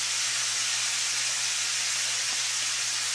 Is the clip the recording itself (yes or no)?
yes